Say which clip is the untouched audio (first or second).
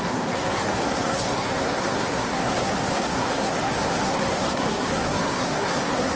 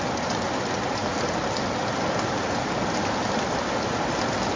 second